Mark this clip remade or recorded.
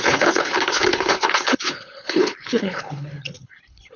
remade